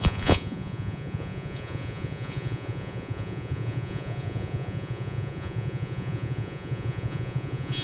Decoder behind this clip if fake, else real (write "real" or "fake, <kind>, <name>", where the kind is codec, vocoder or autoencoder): fake, vocoder, Vocos